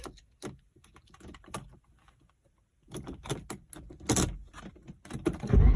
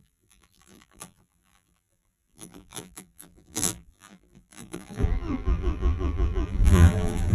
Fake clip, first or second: second